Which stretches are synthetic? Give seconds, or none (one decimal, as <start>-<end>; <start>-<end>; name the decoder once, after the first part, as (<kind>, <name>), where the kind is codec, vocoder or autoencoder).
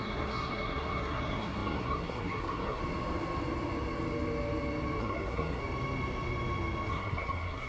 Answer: 0.0-2.8 (codec, SNAC); 5.0-5.6; 6.9-7.7